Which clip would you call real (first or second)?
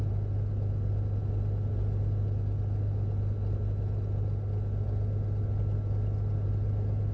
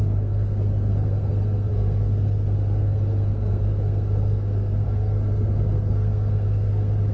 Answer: first